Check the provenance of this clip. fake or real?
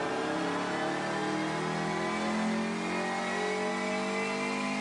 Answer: real